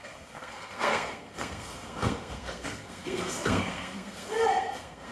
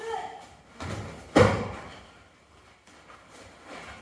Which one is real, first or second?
second